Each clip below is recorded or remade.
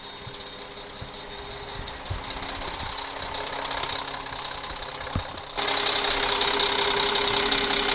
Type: recorded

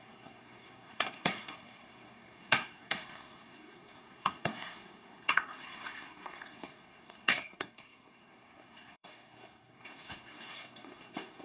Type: remade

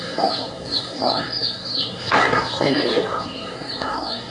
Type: remade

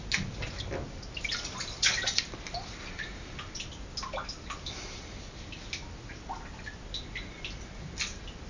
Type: recorded